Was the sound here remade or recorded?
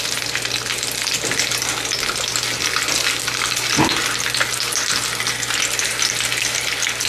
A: recorded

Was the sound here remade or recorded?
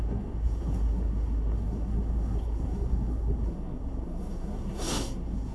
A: remade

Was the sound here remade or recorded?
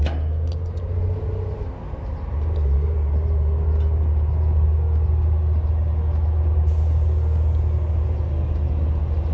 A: recorded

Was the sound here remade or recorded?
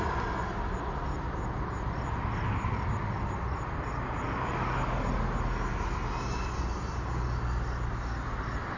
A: recorded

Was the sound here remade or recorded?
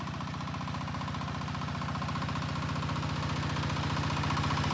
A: recorded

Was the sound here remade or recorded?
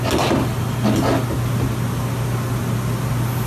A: recorded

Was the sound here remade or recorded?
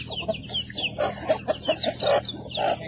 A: recorded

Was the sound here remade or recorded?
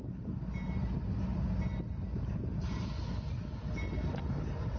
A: recorded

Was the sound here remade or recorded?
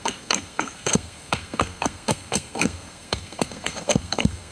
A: remade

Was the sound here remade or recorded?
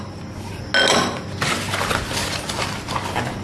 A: recorded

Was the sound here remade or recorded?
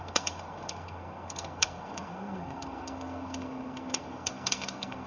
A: remade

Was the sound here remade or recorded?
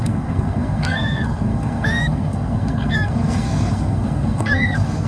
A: remade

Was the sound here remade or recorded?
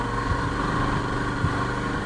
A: recorded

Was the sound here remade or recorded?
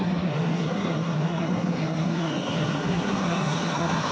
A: remade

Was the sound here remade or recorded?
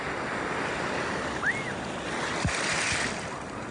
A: recorded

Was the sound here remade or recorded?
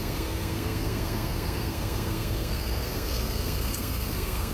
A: remade